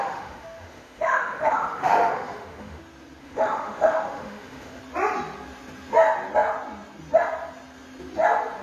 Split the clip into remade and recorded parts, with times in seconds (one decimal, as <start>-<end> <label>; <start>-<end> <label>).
0.0-2.8 remade; 2.8-3.2 recorded; 3.2-4.8 remade; 4.8-8.6 recorded